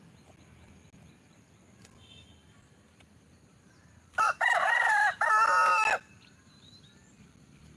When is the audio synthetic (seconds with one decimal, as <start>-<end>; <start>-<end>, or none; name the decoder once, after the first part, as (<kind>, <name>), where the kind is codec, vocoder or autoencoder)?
2.4-5.3 (vocoder, BigVGAN v2)